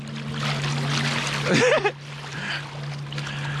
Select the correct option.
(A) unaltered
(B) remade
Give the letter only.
A